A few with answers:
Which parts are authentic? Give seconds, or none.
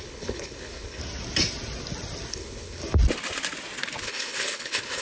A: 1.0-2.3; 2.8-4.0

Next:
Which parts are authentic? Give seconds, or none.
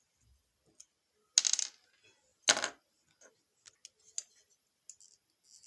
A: 0.0-5.7